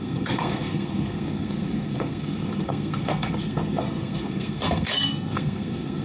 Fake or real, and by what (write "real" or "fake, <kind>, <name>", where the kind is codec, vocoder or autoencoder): fake, codec, SNAC